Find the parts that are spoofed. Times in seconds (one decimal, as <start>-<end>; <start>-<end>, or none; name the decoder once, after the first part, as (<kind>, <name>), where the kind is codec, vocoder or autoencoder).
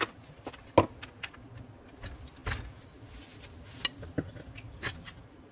none